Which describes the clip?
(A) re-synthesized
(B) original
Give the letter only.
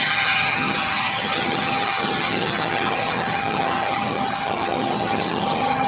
A